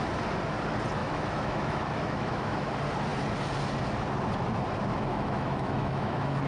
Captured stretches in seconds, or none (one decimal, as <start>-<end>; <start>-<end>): 0.0-1.0; 2.7-4.9